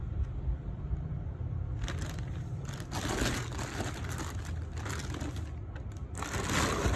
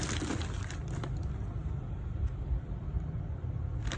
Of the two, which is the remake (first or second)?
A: second